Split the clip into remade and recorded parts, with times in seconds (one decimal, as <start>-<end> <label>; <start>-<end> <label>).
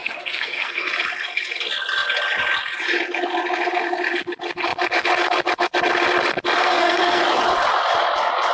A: 0.0-0.9 remade; 0.9-6.6 recorded; 6.6-7.2 remade; 7.2-8.5 recorded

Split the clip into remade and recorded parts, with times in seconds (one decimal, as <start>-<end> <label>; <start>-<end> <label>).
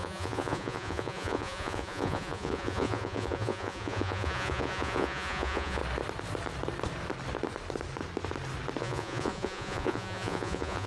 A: 0.0-5.8 remade; 5.8-8.8 recorded; 8.8-10.9 remade